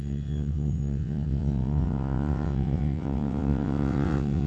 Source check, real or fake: fake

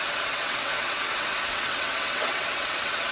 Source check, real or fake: fake